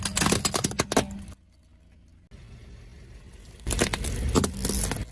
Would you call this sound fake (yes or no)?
no